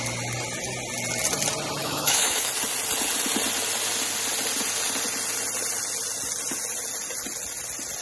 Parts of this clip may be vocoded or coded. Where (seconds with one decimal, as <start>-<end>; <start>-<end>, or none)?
1.8-2.5